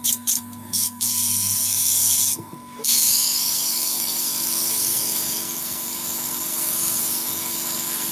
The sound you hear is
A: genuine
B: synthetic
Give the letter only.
B